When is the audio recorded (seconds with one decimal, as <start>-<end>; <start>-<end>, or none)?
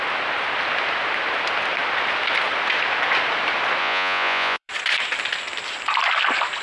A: 0.0-3.8; 4.7-6.6